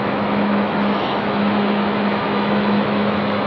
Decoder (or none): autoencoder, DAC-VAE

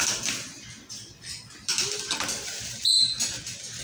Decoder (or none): none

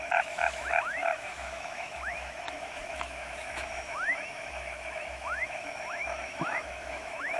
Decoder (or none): autoencoder, DAC-VAE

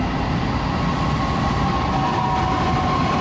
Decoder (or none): none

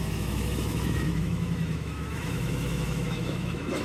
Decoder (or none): autoencoder, DAC-VAE